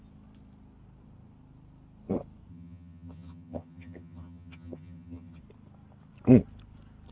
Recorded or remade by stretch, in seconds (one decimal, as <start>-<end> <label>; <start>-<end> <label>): 0.0-2.5 recorded; 2.5-5.4 remade; 5.4-7.1 recorded